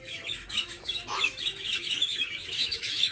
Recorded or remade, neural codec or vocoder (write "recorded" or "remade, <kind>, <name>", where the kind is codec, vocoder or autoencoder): remade, autoencoder, DAC-VAE